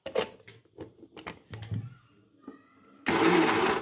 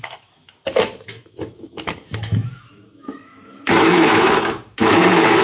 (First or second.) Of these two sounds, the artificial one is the second